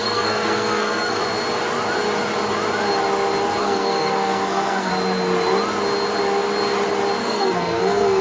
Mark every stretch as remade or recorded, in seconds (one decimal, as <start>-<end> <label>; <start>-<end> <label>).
0.0-1.2 remade; 1.2-3.6 recorded; 3.6-4.9 remade; 4.9-7.2 recorded; 7.2-8.2 remade